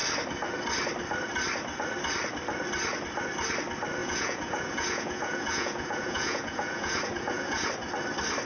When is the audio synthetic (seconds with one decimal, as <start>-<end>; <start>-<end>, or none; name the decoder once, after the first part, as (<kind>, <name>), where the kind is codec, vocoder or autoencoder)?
4.0-7.7 (vocoder, Vocos)